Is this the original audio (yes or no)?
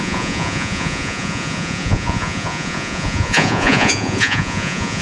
no